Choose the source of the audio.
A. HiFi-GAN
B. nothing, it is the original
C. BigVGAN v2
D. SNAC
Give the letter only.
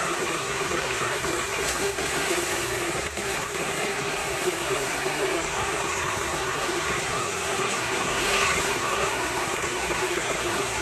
D